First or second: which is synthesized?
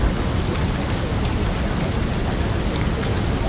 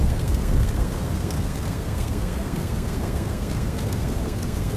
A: second